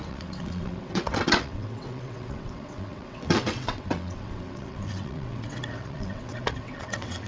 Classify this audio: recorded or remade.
remade